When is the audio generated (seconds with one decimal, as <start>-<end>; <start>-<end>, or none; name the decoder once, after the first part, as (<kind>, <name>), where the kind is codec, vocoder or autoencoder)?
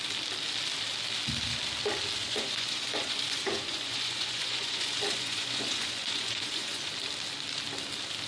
2.2-6.9 (vocoder, Vocos)